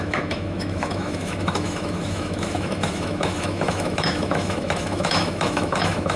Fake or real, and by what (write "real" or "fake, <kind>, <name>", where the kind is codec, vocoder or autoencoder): fake, autoencoder, DAC-VAE